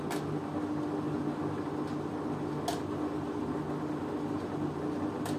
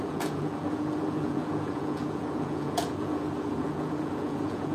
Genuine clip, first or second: first